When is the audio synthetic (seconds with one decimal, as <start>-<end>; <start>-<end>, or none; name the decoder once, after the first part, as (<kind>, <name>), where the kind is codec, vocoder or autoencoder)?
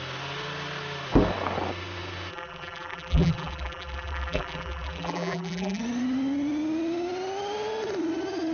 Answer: 2.3-5.8 (vocoder, BigVGAN v2)